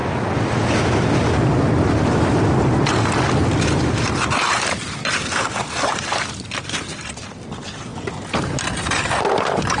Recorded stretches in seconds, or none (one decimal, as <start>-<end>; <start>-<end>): 0.0-9.8